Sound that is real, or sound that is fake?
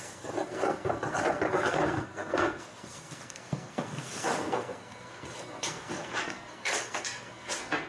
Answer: fake